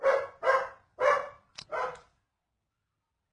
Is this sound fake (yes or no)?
no